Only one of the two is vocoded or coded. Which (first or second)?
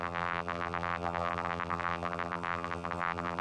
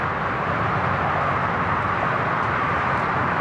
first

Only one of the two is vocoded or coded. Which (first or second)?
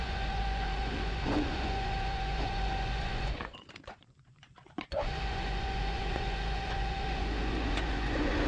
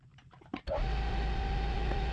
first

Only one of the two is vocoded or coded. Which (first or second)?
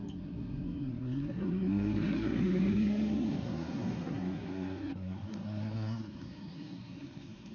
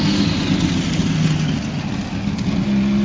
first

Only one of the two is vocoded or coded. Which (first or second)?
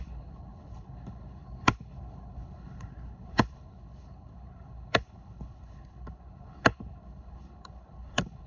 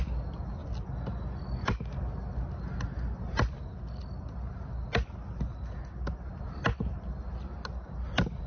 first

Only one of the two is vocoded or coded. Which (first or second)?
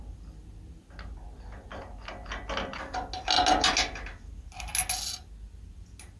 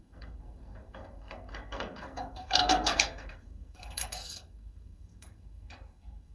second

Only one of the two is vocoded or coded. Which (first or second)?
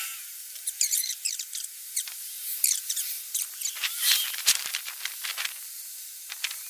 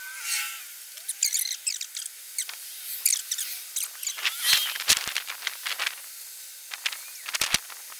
first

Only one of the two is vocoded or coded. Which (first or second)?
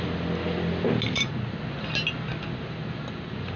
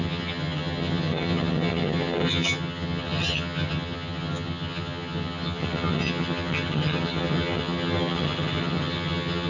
second